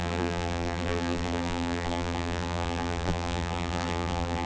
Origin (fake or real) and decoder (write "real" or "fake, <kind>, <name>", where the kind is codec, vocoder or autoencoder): fake, vocoder, BigVGAN v2